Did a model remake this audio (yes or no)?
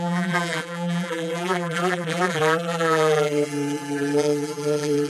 yes